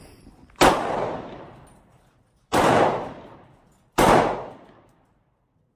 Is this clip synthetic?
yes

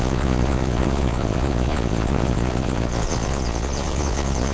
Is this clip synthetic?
yes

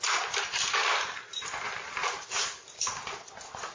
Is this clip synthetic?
yes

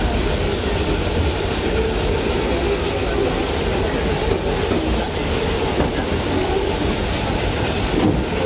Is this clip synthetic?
no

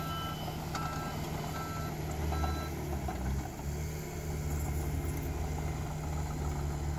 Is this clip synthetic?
no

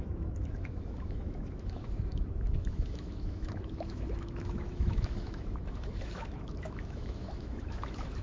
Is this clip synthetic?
yes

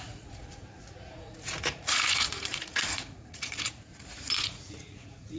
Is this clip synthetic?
yes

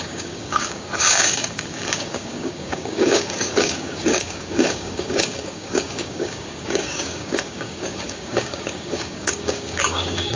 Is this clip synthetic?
yes